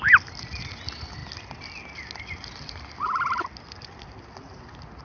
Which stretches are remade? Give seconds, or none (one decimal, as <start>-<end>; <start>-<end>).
none